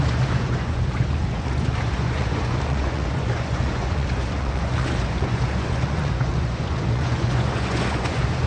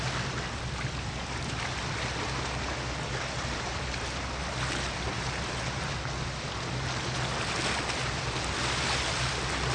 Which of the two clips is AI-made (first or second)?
first